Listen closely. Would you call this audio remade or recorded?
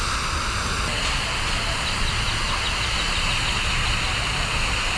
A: recorded